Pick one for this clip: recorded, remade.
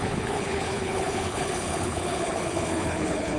remade